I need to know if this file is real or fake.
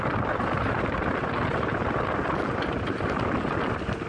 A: real